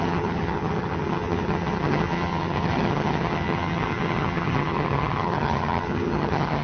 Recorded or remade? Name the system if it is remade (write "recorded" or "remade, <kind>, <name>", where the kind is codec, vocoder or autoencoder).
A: remade, vocoder, HiFi-GAN